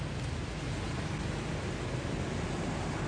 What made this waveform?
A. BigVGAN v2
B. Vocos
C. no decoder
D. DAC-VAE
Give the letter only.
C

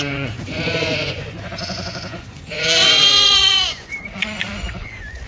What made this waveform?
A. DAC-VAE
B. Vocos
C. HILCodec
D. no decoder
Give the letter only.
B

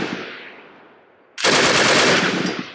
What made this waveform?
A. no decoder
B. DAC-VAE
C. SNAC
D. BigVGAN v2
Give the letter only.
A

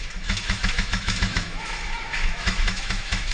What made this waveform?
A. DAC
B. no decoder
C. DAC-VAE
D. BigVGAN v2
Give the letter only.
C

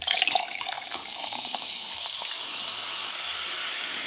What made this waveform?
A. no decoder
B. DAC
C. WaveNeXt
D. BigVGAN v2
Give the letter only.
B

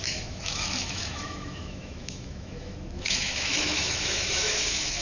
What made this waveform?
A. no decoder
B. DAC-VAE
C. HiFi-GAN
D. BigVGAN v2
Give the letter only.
B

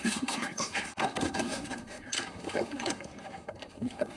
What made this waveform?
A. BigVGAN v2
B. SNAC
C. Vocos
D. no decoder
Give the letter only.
B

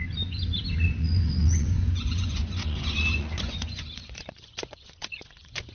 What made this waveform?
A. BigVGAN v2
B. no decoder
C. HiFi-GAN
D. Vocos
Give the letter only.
D